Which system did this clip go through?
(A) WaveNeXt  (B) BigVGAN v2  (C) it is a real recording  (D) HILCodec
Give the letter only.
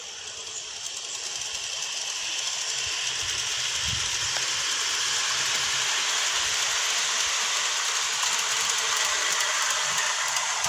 C